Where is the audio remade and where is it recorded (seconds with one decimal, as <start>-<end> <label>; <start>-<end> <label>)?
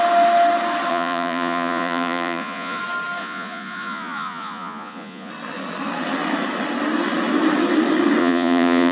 0.0-0.9 recorded; 0.9-2.8 remade; 2.8-3.2 recorded; 3.2-5.3 remade; 5.3-8.2 recorded; 8.2-8.9 remade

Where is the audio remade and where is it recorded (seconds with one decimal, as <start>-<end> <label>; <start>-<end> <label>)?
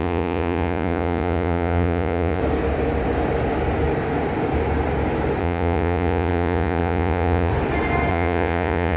0.0-2.4 remade; 2.4-5.4 recorded; 5.4-7.5 remade; 7.5-8.1 recorded; 8.1-9.0 remade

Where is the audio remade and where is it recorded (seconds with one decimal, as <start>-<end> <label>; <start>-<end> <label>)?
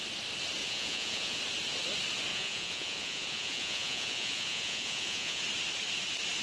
0.0-0.6 recorded; 0.6-1.4 remade; 1.4-2.3 recorded; 2.3-5.4 remade; 5.4-6.4 recorded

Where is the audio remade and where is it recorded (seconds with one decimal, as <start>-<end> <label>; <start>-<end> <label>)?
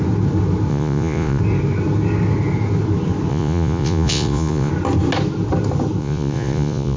0.0-0.7 recorded; 0.7-1.4 remade; 1.4-3.3 recorded; 3.3-4.7 remade; 4.7-6.0 recorded; 6.0-7.0 remade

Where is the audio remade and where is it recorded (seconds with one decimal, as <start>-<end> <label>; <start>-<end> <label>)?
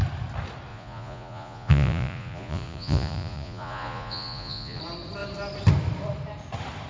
0.0-0.7 recorded; 0.7-4.8 remade; 4.8-6.9 recorded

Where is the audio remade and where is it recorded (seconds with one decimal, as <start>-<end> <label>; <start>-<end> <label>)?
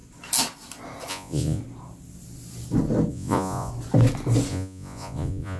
0.0-1.1 recorded; 1.1-1.6 remade; 1.6-3.1 recorded; 3.1-3.7 remade; 3.7-4.5 recorded; 4.5-5.6 remade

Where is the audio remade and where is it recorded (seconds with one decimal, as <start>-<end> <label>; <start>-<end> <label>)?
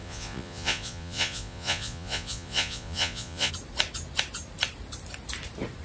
0.0-3.5 remade; 3.5-5.8 recorded